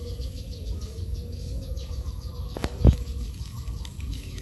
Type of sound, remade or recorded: remade